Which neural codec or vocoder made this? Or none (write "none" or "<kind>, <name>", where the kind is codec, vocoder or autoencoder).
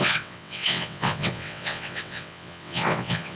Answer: vocoder, WaveNeXt